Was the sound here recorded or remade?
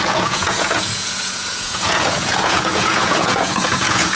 remade